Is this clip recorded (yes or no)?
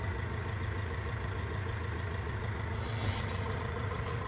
no